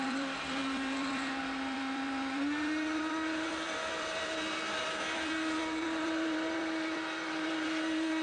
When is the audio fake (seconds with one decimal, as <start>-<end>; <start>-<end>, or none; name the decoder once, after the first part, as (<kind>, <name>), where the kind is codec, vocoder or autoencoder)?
0.0-8.2 (vocoder, BigVGAN v2)